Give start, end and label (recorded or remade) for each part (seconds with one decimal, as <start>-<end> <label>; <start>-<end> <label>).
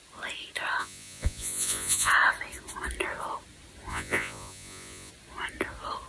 0.0-0.8 recorded; 0.8-2.1 remade; 2.1-3.9 recorded; 3.9-5.1 remade; 5.1-6.1 recorded